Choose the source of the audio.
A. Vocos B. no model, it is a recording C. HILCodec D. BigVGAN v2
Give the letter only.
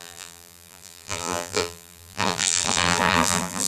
D